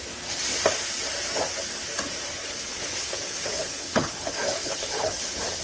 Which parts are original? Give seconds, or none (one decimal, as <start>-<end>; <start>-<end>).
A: 0.0-2.4